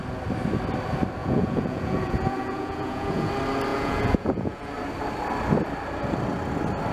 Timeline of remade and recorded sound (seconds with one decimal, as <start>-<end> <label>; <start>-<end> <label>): 0.0-1.2 recorded; 1.2-3.3 remade; 3.3-3.7 recorded; 3.7-4.7 remade; 4.7-6.9 recorded